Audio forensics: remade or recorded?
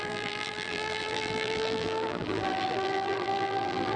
remade